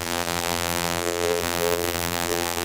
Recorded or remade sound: remade